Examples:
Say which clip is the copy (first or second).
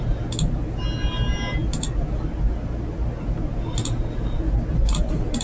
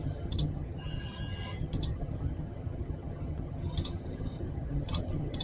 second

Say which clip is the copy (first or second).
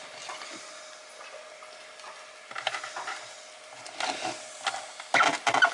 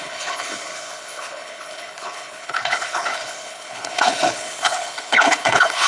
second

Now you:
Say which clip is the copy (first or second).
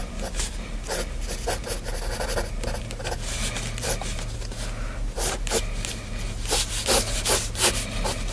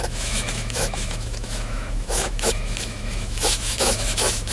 second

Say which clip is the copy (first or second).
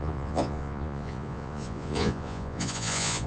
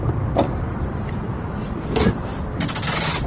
first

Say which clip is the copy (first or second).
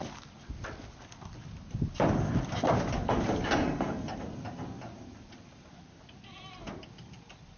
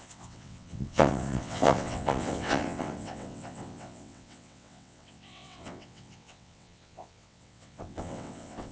second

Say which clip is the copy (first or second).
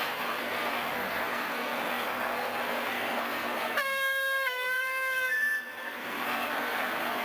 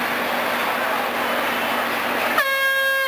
first